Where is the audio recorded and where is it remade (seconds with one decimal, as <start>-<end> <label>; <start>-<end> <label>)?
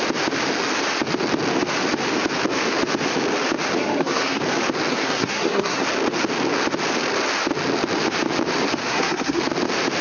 0.0-3.8 recorded; 3.8-4.4 remade; 4.4-4.9 recorded; 4.9-5.8 remade; 5.8-8.8 recorded; 8.8-9.4 remade; 9.4-10.0 recorded